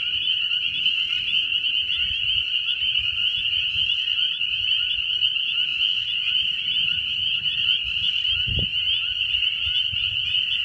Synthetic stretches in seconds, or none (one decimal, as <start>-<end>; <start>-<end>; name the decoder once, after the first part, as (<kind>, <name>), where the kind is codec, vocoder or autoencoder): 3.2-3.8 (vocoder, Vocos); 5.7-6.3; 7.2-7.8